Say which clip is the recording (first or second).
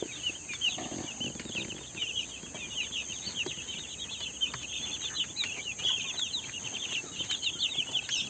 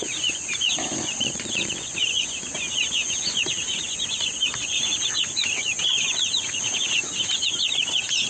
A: first